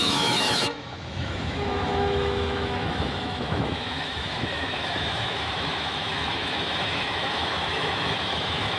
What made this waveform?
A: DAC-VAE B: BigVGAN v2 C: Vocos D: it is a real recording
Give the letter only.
A